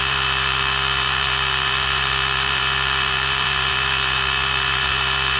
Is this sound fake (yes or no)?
yes